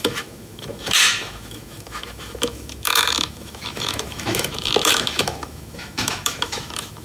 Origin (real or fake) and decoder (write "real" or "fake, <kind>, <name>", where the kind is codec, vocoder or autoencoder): fake, autoencoder, DAC-VAE